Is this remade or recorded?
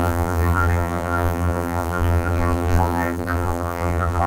remade